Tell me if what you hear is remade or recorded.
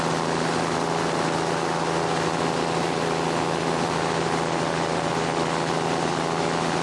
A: recorded